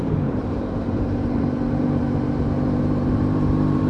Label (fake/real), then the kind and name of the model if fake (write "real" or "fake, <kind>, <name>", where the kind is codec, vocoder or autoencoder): fake, vocoder, BigVGAN v2